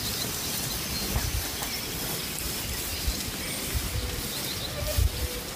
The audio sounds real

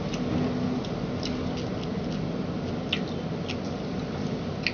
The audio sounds real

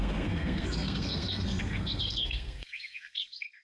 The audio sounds fake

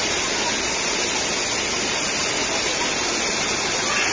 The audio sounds real